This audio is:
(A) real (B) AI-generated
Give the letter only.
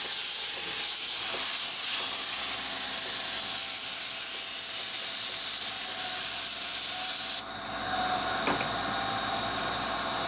A